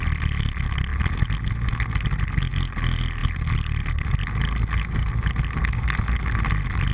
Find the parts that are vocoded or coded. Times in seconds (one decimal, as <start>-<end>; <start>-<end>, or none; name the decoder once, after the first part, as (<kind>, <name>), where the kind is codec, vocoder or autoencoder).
none